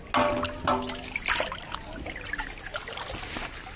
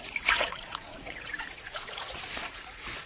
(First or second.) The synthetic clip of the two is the second